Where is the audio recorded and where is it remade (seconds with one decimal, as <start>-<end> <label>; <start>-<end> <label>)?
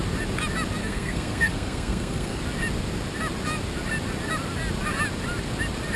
0.0-0.8 recorded; 0.8-2.4 remade; 2.4-6.0 recorded